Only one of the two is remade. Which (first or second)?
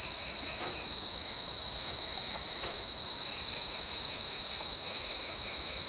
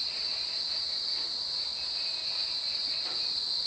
first